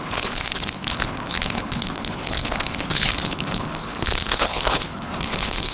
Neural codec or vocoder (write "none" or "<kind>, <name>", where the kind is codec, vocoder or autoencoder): codec, HILCodec